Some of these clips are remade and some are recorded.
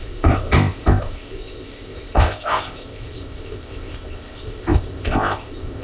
remade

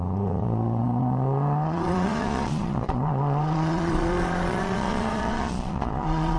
remade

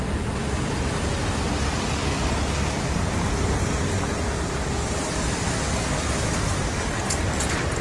recorded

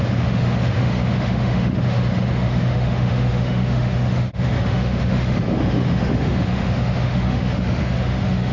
remade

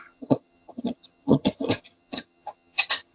remade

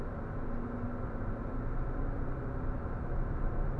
recorded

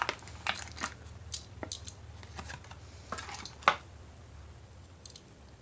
recorded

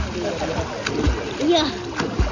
recorded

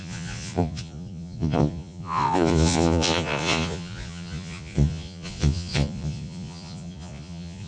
remade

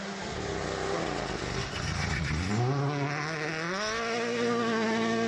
recorded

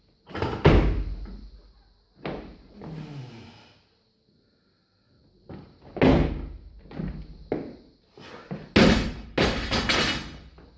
recorded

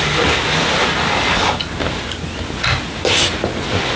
recorded